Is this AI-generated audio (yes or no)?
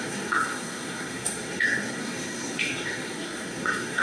yes